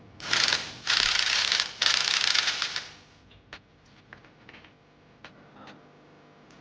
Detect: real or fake real